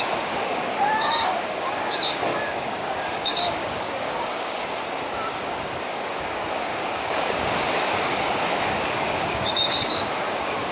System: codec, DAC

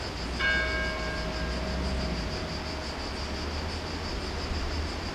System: none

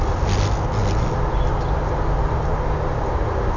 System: none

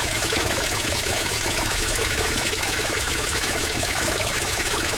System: autoencoder, DAC-VAE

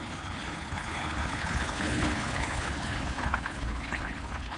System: codec, HILCodec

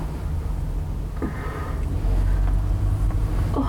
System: none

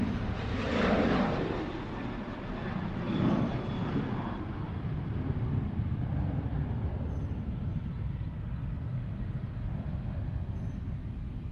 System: none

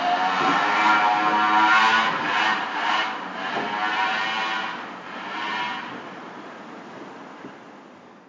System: none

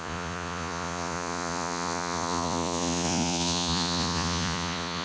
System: vocoder, Vocos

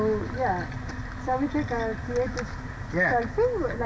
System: none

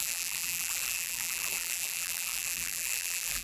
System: vocoder, BigVGAN v2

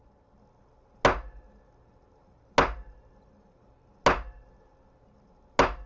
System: none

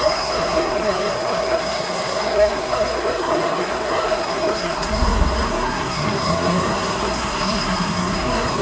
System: codec, SNAC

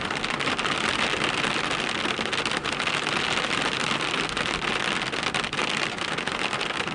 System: none